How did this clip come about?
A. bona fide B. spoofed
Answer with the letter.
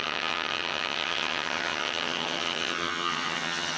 B